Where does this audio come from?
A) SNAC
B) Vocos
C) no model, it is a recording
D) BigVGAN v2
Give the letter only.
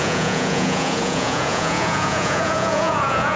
B